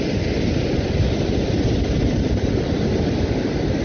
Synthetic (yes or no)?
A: no